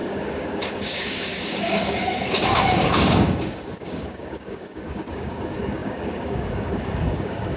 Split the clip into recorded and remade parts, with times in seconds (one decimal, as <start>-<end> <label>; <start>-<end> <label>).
0.0-7.6 remade